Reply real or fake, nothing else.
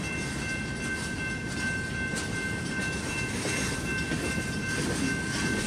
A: real